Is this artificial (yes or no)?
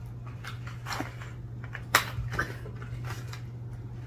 no